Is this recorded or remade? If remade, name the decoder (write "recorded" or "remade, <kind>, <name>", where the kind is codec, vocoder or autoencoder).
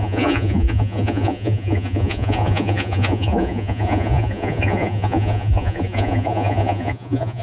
remade, vocoder, Vocos